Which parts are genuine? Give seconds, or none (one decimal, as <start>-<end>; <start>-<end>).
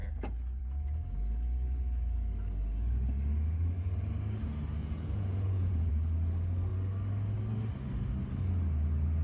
0.0-4.8; 5.9-9.2